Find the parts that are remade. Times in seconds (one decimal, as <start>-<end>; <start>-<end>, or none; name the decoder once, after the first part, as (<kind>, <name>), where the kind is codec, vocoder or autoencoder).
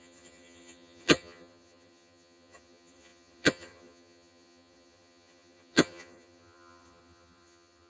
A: 0.0-7.9 (vocoder, HiFi-GAN)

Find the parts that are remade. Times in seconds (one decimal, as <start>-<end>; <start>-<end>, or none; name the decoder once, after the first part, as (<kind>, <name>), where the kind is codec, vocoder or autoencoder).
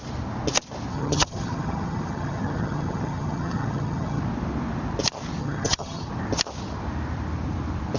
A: 0.9-4.2 (vocoder, HiFi-GAN); 5.4-6.1